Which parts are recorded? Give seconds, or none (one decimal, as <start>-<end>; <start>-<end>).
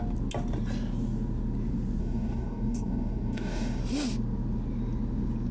0.0-2.0; 3.8-5.5